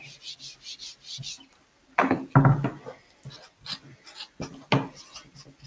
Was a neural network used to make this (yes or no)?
no